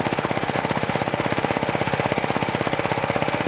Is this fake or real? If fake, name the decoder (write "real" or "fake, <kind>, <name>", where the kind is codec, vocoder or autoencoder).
fake, autoencoder, DAC-VAE